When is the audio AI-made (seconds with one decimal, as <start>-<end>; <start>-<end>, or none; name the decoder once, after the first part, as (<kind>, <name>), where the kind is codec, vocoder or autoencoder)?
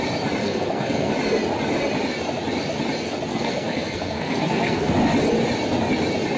0.4-1.1 (codec, SNAC); 3.3-4.9